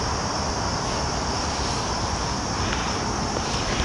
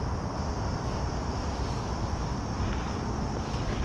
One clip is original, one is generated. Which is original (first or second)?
second